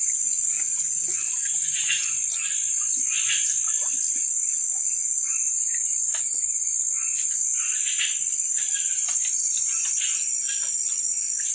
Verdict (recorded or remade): recorded